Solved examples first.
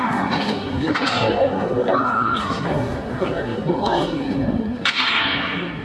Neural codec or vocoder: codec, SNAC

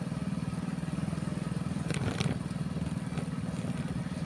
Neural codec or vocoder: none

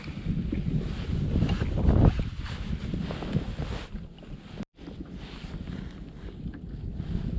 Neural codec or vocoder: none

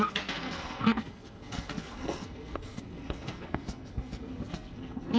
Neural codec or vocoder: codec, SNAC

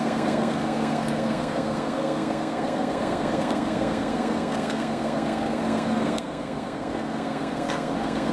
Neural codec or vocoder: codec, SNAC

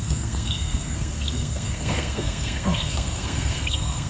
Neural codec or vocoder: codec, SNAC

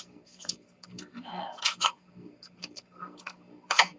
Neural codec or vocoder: codec, SNAC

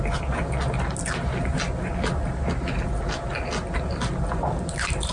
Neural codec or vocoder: none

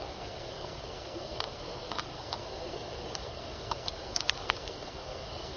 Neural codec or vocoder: codec, SNAC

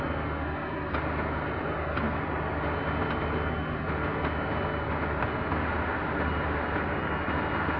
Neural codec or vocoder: none